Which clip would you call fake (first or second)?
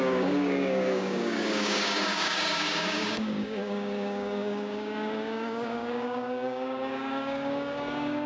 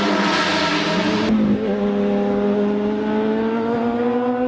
first